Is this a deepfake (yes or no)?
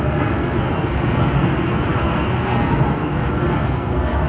yes